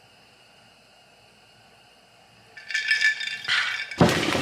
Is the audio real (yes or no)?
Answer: yes